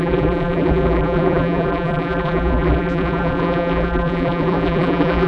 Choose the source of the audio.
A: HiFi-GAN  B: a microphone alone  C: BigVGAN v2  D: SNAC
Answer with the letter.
C